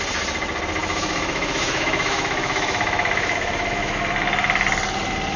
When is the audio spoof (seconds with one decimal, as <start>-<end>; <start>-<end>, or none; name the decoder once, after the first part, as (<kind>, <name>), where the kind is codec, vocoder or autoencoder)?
0.8-4.0 (autoencoder, DAC-VAE)